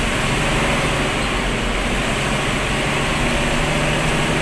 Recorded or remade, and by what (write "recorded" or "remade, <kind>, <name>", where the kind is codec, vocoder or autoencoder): recorded